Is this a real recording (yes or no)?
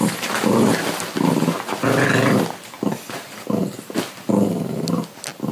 yes